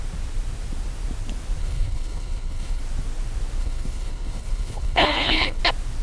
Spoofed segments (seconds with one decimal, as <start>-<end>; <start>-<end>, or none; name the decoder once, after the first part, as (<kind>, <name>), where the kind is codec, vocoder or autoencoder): 1.6-2.8 (codec, HILCodec); 3.6-5.6